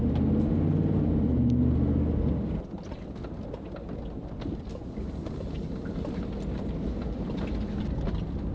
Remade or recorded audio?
recorded